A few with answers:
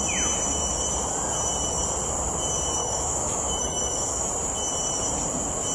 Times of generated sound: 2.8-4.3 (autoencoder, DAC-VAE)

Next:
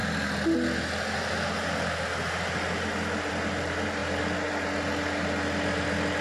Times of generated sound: none